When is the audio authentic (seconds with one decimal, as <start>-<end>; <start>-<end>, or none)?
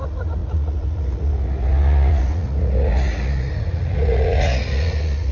none